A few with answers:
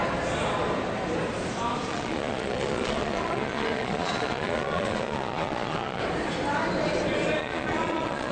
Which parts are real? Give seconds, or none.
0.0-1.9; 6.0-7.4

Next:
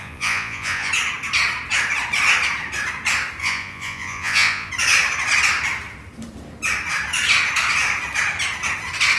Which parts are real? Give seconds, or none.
0.9-3.4; 4.7-9.2

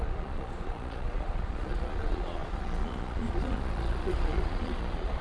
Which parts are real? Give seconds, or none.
none

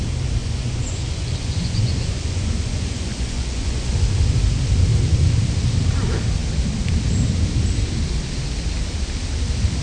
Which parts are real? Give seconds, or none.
0.0-0.4; 3.9-9.8

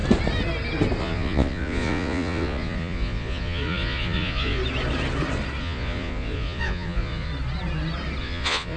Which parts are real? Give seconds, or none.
0.0-1.0; 4.6-5.6; 7.3-8.2

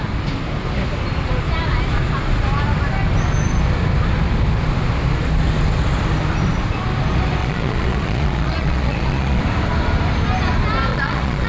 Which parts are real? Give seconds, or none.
0.0-7.4; 9.4-10.9

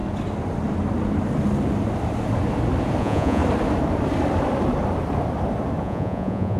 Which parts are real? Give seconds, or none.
0.0-3.0; 3.4-5.8

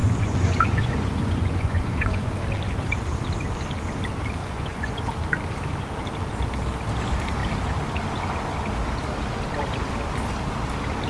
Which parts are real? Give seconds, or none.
2.3-4.4; 5.0-11.1